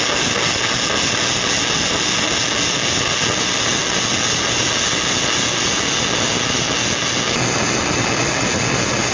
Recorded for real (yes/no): yes